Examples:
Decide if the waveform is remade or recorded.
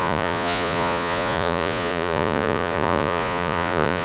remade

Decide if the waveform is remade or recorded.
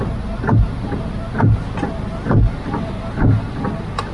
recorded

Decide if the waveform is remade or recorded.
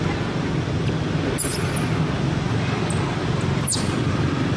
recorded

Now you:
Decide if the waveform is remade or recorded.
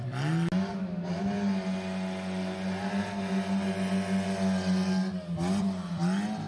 recorded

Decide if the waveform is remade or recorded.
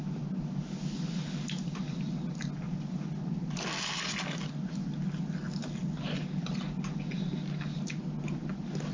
recorded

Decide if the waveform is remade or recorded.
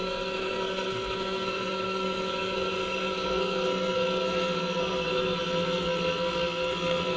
remade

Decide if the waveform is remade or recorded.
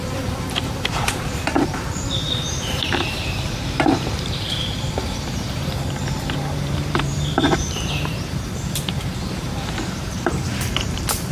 remade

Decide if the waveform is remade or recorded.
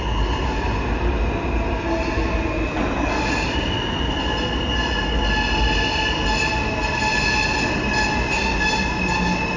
recorded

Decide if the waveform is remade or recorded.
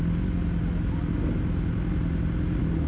recorded